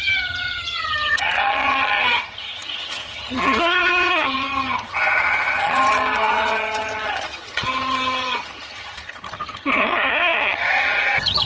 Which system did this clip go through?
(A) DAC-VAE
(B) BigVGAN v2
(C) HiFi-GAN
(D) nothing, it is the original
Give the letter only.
C